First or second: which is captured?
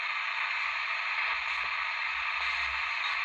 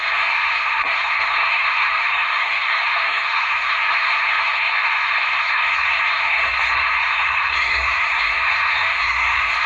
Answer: first